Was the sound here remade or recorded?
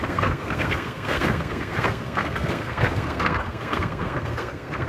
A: remade